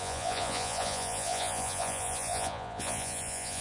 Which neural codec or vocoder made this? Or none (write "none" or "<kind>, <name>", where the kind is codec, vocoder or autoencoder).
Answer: vocoder, Vocos